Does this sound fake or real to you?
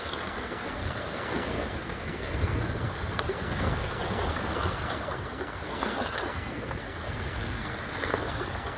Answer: fake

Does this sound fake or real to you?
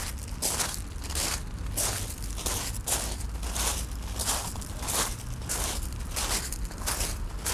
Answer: real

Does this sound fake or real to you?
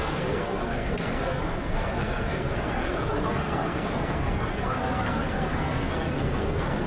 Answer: fake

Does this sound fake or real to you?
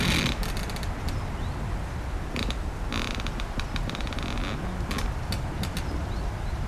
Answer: real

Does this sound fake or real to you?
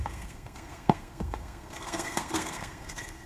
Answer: fake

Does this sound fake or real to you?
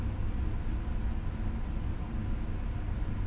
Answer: real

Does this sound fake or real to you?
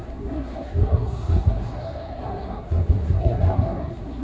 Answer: fake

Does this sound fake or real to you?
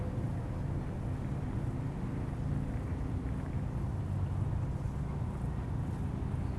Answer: real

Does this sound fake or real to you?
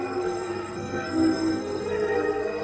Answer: fake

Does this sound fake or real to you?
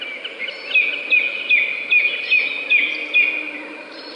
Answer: real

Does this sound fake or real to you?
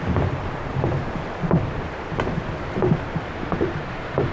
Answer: real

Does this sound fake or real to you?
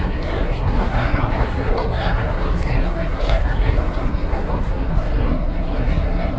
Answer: fake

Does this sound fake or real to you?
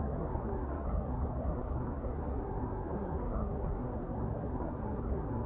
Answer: fake